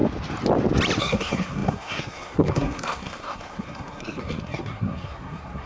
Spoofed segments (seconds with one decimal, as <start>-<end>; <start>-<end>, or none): 1.0-5.7